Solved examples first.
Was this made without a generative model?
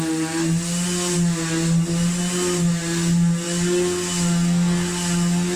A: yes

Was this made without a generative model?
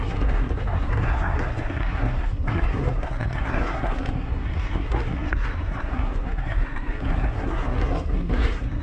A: no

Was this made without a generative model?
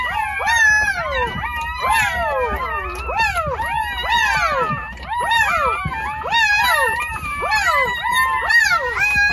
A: yes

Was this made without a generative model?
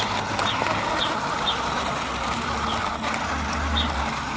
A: yes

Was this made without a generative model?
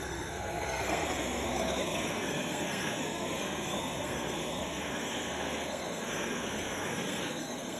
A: no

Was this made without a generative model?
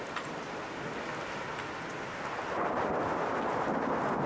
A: yes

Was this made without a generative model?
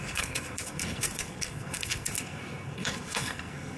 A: no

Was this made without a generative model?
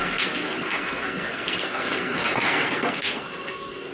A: no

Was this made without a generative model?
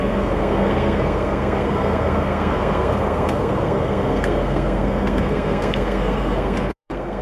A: no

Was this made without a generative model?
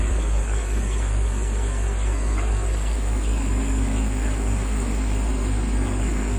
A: no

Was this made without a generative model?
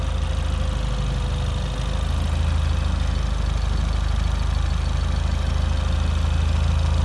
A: yes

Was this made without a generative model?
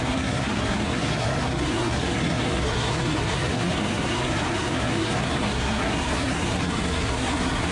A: no